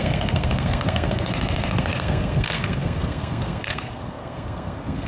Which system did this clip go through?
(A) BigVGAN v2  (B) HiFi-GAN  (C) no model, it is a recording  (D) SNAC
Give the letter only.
D